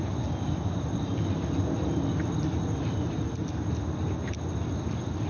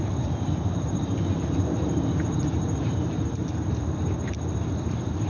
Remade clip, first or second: second